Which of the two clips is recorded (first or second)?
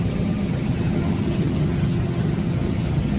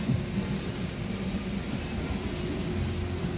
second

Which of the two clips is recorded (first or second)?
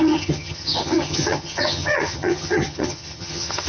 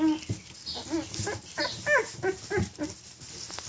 second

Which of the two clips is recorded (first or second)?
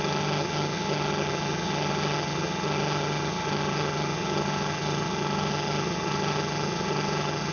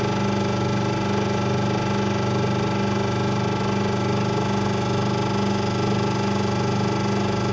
second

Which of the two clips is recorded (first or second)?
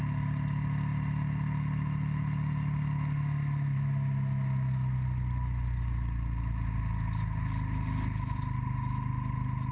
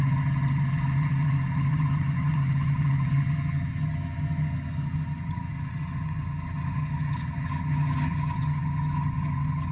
first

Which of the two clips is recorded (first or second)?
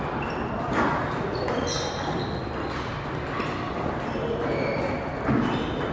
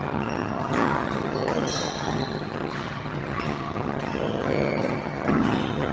first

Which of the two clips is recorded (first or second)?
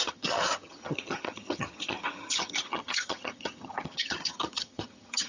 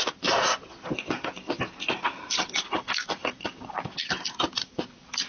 second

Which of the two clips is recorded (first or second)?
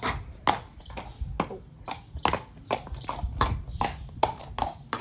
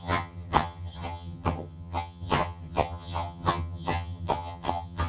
first